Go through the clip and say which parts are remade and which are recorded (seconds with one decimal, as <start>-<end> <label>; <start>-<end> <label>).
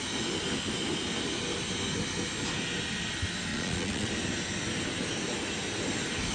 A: 0.0-3.5 recorded; 3.5-4.1 remade; 4.1-6.3 recorded